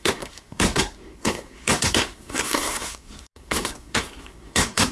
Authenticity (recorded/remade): remade